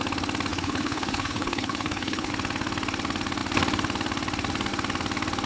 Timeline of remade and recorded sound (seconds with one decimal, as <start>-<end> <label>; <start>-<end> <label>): 0.0-0.5 recorded; 0.5-2.3 remade; 2.3-5.5 recorded